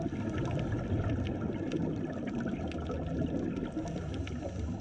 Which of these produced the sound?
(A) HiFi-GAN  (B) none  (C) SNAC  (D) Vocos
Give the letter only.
B